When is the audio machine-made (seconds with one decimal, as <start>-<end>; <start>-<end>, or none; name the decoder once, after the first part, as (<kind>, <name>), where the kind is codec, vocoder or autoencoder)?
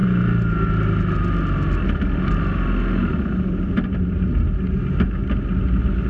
none